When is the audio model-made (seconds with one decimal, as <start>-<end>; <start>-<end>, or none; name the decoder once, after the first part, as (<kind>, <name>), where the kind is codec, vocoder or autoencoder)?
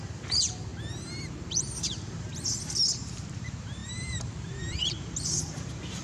0.0-0.7 (vocoder, BigVGAN v2); 1.5-2.3; 2.9-6.0